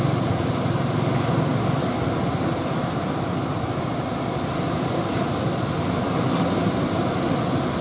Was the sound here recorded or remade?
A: recorded